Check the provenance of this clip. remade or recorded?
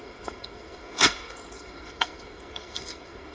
remade